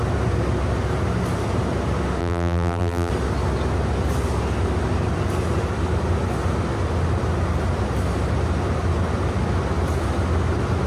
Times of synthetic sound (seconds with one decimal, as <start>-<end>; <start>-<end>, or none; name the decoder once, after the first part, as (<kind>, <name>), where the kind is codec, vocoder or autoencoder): 2.2-3.1 (vocoder, BigVGAN v2)